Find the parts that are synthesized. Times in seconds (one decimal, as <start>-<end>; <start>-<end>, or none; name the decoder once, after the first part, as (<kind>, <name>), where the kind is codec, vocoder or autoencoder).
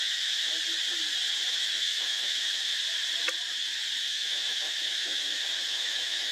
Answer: 0.0-0.5 (autoencoder, DAC-VAE); 1.5-2.7; 4.0-6.3